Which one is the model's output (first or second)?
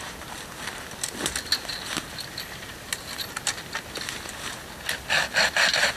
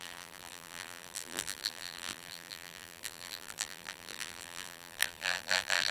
second